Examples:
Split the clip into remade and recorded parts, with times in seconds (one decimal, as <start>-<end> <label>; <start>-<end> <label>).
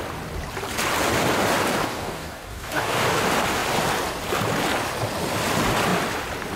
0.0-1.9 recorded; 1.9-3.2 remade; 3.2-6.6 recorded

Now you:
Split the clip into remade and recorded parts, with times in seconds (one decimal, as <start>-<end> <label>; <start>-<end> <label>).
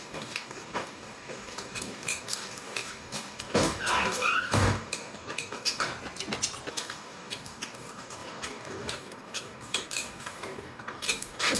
0.0-5.9 remade; 5.9-6.7 recorded; 6.7-11.6 remade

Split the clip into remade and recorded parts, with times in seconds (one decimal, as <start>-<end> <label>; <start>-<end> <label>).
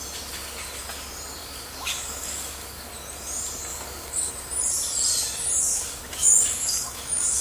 0.0-1.4 recorded; 1.4-2.9 remade; 2.9-3.7 recorded; 3.7-4.3 remade; 4.3-5.7 recorded; 5.7-7.4 remade